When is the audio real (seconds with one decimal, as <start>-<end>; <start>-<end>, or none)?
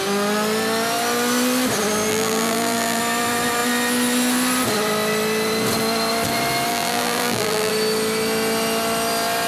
0.0-2.1; 3.0-6.7; 7.7-9.5